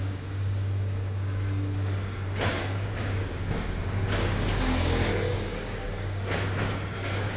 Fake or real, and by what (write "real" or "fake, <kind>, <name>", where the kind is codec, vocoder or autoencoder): fake, codec, DAC